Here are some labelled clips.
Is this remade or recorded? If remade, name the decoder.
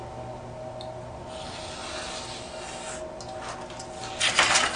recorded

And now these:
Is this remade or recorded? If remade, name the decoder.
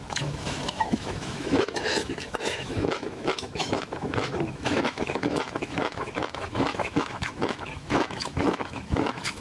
remade, autoencoder, DAC-VAE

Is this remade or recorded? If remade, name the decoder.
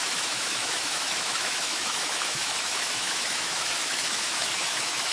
remade, autoencoder, DAC-VAE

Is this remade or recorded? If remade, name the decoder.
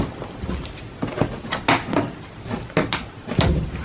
recorded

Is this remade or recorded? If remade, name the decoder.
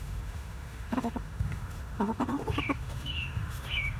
remade, autoencoder, DAC-VAE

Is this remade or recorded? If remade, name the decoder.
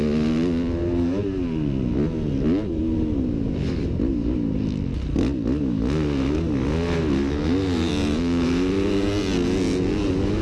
recorded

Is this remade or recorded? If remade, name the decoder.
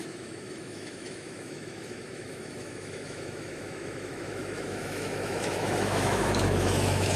remade, autoencoder, DAC-VAE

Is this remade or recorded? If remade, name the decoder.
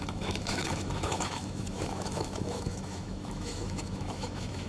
remade, autoencoder, DAC-VAE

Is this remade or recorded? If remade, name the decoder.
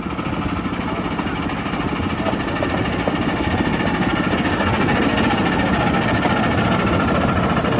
recorded